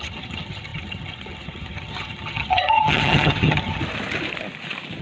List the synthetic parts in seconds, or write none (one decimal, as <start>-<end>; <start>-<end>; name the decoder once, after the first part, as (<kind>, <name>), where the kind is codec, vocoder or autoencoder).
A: 0.0-3.8 (vocoder, HiFi-GAN)